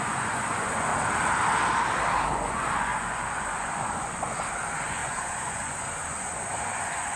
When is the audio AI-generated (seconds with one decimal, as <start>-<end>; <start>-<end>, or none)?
0.0-0.9; 2.3-7.2